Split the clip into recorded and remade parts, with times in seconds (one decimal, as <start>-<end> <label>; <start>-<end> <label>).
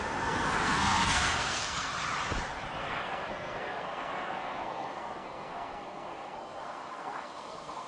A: 0.0-1.9 remade; 1.9-2.8 recorded; 2.8-7.9 remade